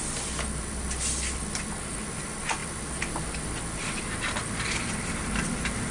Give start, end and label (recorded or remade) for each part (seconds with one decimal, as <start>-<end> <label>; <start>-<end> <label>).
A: 0.0-5.9 recorded